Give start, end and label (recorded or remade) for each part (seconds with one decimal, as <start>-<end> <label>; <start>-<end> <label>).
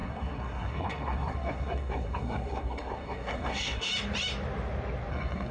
0.0-3.9 remade; 3.9-5.1 recorded; 5.1-5.5 remade